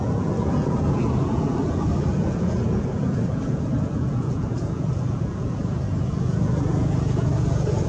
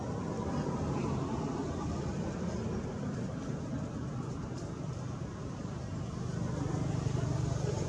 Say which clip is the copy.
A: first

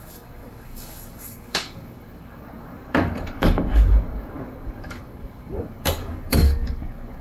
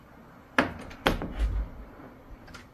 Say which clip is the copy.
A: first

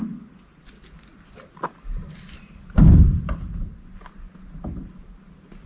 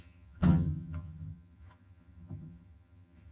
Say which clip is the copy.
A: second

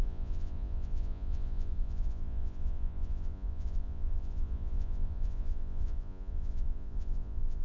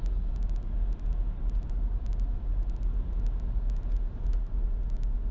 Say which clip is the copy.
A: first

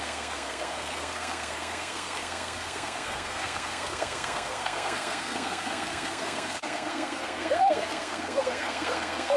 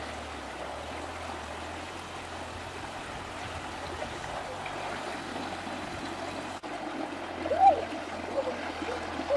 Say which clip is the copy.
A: first